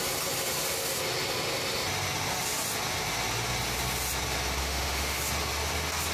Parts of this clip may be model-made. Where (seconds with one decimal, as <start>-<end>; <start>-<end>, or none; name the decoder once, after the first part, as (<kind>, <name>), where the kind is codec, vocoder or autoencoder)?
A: 4.6-5.2 (autoencoder, DAC-VAE)